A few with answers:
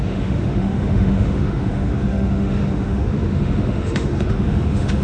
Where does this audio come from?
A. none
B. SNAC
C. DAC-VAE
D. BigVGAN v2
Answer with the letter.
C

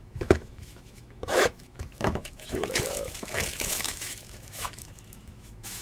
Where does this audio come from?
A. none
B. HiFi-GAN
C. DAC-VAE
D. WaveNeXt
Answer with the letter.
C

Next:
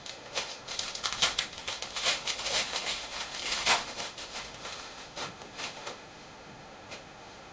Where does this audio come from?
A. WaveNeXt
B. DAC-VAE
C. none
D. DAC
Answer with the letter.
B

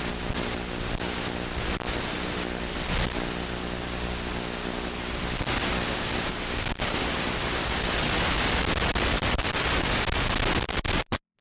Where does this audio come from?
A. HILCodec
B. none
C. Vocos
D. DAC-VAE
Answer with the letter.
B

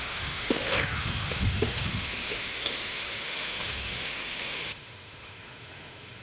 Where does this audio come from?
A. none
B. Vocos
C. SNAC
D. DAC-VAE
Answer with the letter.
D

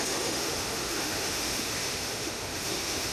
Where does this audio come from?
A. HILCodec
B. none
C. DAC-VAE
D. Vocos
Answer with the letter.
C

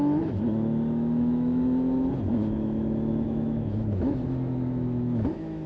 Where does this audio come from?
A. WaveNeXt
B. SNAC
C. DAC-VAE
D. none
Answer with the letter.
C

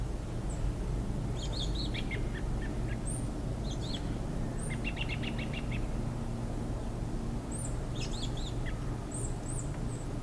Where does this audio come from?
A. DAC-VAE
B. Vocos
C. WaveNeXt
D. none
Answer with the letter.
D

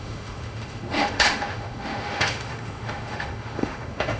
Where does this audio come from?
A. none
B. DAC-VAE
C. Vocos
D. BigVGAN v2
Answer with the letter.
B